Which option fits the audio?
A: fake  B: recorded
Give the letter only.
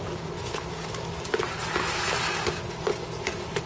B